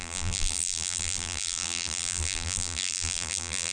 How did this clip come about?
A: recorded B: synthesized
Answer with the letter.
B